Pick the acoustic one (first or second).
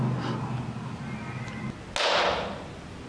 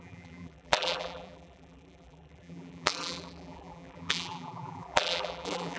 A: first